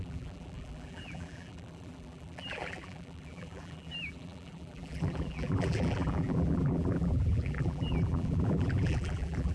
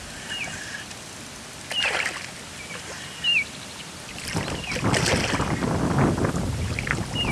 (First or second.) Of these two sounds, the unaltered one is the second